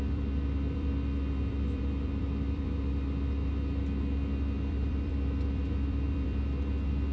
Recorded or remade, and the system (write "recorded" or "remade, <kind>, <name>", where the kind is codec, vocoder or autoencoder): remade, vocoder, BigVGAN v2